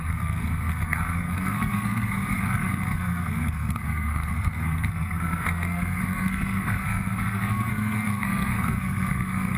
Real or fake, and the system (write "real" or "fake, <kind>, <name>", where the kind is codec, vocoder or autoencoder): fake, codec, SNAC